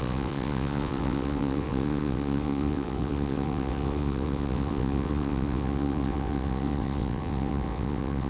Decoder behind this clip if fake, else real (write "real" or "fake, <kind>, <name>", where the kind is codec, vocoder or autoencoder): fake, vocoder, WaveNeXt